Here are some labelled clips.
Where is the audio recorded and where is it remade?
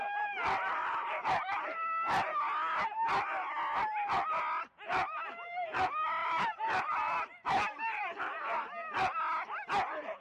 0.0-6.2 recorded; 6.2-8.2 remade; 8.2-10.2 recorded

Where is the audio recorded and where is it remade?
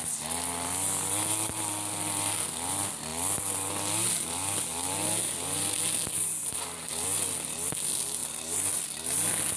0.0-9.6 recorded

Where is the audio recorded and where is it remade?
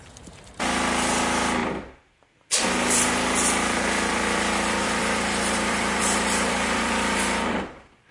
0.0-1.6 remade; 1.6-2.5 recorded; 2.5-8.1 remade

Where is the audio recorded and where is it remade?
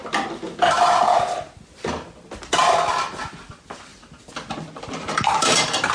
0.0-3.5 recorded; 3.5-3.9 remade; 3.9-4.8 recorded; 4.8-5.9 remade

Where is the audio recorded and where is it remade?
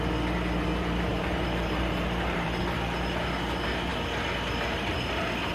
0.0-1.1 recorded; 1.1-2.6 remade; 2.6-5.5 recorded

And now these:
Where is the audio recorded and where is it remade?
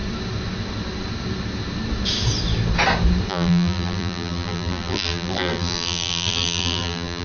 0.0-3.3 recorded; 3.3-7.2 remade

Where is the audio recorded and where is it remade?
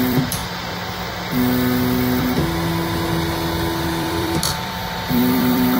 0.0-0.4 remade; 0.4-3.9 recorded; 3.9-5.8 remade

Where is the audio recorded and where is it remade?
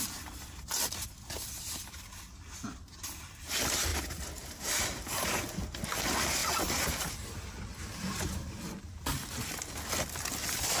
0.0-3.9 recorded; 3.9-5.4 remade; 5.4-10.8 recorded